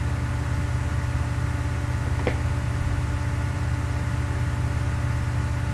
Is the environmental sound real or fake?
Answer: real